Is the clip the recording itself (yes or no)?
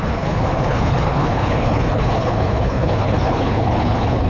no